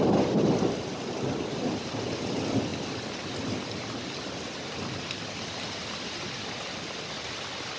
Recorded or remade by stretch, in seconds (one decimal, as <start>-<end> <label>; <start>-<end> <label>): 0.0-7.8 recorded